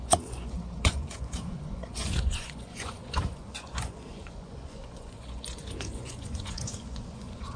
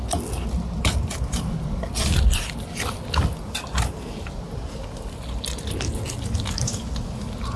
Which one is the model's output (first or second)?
first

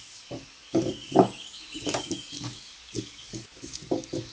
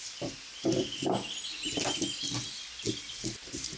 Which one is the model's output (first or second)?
first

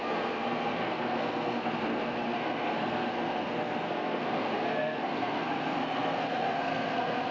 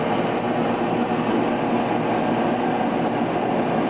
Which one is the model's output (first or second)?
first